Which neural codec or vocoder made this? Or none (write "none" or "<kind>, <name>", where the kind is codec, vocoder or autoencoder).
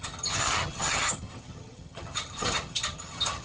vocoder, HiFi-GAN